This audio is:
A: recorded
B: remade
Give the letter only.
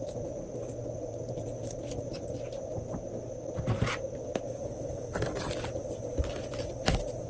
A